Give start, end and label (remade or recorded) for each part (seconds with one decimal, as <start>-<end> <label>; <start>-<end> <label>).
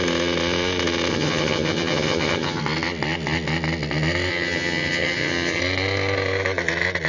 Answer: 0.0-1.1 recorded; 1.1-2.6 remade; 2.6-4.3 recorded; 4.3-5.6 remade; 5.6-7.1 recorded